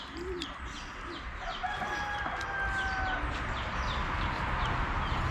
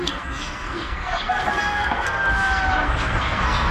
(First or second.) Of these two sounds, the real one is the first